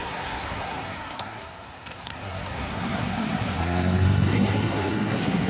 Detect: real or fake fake